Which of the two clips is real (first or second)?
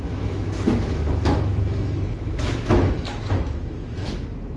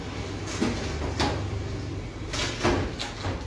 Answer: second